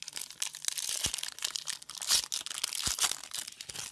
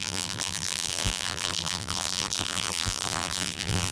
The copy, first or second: second